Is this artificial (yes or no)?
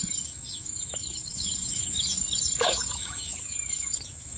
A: yes